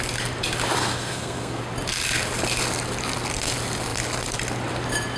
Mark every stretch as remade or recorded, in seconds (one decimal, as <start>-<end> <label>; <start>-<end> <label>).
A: 0.0-0.8 recorded; 0.8-1.6 remade; 1.6-5.2 recorded